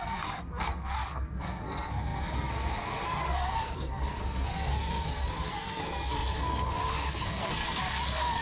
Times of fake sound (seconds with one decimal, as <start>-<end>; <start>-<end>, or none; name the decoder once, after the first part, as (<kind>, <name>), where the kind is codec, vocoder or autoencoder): 0.0-8.4 (codec, SNAC)